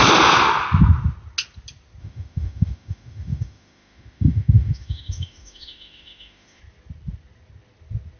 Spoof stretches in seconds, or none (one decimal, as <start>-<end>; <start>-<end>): 2.0-6.6